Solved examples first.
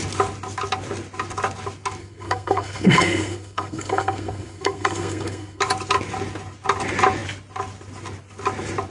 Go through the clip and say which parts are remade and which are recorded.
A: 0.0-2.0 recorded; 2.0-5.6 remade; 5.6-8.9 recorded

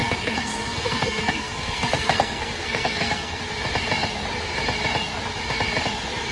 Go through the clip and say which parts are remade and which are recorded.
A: 0.0-3.4 remade; 3.4-6.3 recorded